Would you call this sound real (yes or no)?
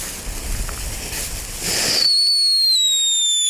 yes